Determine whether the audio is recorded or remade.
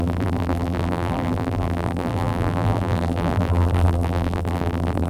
remade